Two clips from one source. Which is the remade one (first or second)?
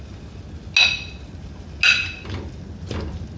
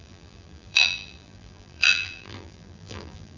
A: second